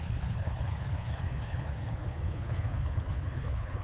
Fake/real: fake